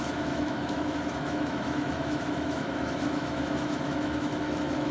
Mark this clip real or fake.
fake